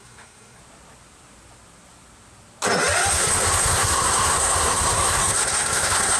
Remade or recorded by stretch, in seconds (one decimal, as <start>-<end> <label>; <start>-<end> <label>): 0.0-0.6 remade; 0.6-3.1 recorded; 3.1-6.2 remade